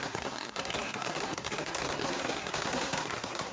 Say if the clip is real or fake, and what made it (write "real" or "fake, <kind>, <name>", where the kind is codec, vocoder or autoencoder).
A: fake, codec, SNAC